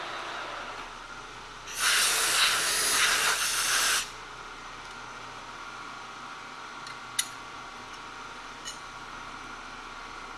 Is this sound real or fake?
real